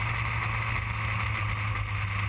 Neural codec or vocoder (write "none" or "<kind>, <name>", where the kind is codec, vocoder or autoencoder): none